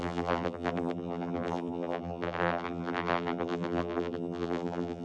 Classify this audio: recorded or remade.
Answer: remade